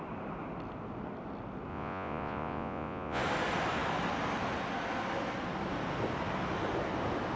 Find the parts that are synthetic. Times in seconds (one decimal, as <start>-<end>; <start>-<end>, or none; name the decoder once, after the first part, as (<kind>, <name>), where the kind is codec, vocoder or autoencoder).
1.7-3.2 (vocoder, Vocos)